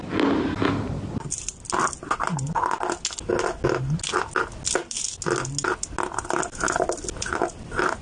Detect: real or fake real